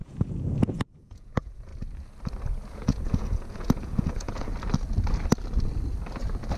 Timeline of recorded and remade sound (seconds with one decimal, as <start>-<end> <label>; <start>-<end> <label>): 0.0-1.7 remade; 1.7-2.7 recorded; 2.7-4.5 remade; 4.5-6.6 recorded